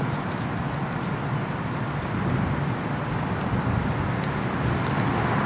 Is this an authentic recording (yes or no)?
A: yes